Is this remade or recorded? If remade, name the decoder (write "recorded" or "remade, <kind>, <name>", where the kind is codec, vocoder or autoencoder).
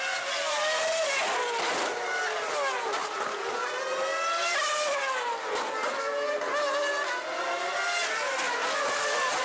recorded